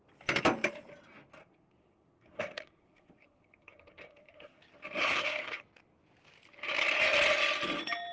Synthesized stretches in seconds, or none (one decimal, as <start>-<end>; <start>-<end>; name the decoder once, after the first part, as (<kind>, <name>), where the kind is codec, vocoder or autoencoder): 1.4-4.6 (codec, SNAC); 5.0-5.6